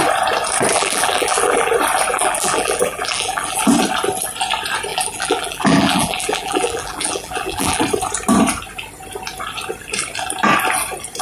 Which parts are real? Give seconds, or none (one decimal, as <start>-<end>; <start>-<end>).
0.0-0.7; 1.7-2.1; 3.7-4.9; 7.8-11.2